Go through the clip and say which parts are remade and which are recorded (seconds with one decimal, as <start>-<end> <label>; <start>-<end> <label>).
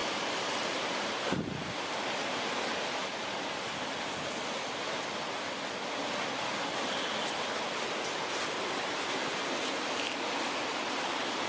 0.0-1.4 remade; 1.4-11.5 recorded